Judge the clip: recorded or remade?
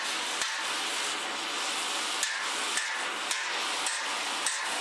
recorded